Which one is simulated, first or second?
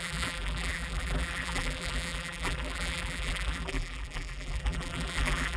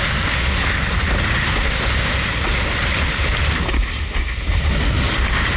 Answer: first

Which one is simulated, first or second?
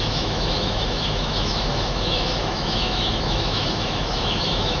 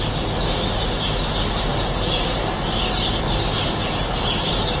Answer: first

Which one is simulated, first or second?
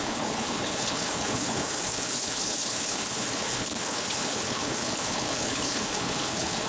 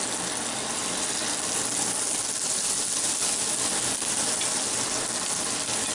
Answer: first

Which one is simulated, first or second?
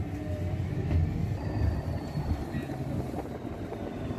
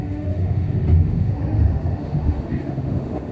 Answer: second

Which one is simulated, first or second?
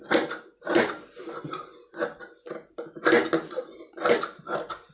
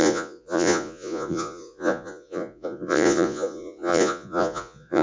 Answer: second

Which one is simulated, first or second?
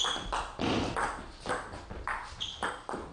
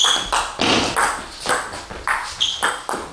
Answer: first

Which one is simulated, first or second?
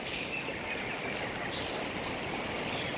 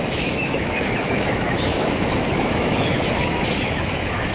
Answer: second